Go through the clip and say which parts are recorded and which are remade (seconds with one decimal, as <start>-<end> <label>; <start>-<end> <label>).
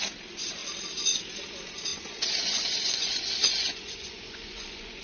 0.0-1.9 recorded; 1.9-5.0 remade